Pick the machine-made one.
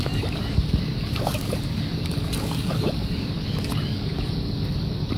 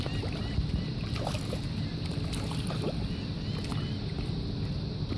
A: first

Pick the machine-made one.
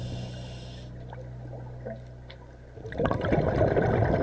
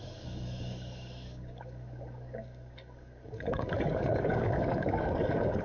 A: second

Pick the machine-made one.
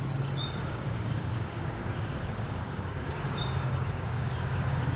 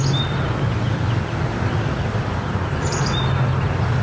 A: first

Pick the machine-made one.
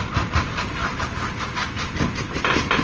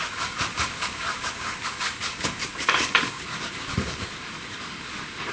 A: second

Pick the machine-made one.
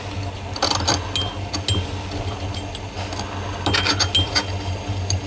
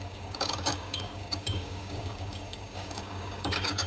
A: second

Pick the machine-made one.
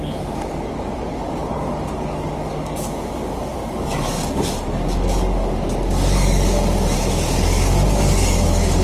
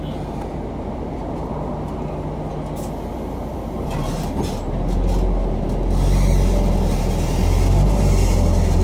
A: first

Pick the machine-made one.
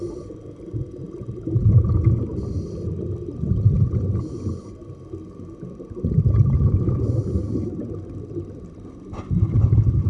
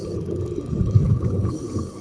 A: second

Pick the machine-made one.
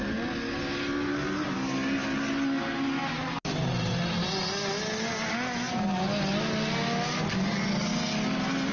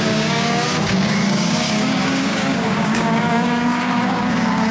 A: second